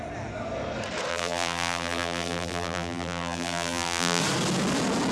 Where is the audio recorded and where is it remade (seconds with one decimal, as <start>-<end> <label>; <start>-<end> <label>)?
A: 0.0-1.1 recorded; 1.1-4.2 remade; 4.2-5.1 recorded